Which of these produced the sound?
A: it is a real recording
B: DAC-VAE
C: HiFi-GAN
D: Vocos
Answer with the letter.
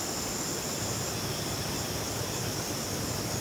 A